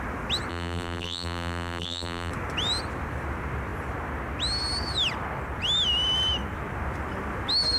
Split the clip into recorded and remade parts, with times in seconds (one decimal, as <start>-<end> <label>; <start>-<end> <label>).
0.0-0.5 recorded; 0.5-2.3 remade; 2.3-7.8 recorded